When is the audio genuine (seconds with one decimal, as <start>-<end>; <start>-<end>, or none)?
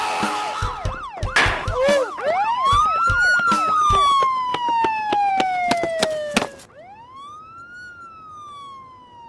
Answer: 0.0-9.3